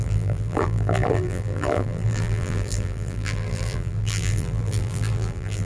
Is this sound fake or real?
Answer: fake